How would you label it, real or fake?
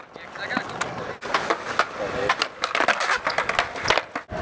real